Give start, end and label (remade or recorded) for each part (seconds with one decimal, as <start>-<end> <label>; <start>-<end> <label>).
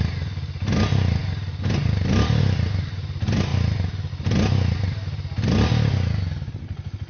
0.0-7.1 recorded